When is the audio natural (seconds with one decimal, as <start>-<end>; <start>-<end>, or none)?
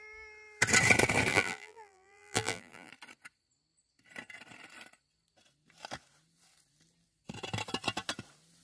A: 0.0-1.3; 2.9-8.6